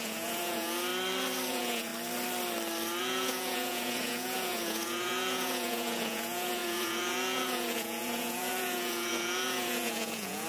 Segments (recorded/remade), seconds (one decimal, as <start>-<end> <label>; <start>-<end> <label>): 0.0-0.9 remade; 0.9-1.5 recorded; 1.5-1.9 remade; 1.9-3.0 recorded; 3.0-10.5 remade